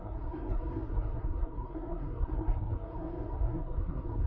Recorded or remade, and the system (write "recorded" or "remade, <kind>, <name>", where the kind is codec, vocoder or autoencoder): remade, codec, SNAC